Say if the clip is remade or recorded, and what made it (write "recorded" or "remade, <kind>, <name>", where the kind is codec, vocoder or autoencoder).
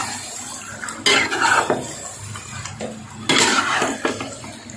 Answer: recorded